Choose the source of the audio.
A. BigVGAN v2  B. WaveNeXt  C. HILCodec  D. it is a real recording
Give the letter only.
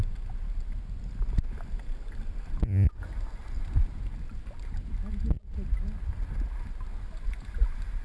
D